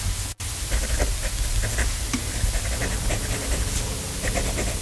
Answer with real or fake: real